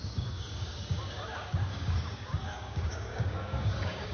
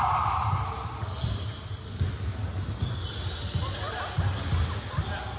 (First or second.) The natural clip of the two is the second